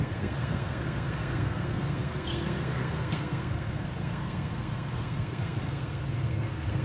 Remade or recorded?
remade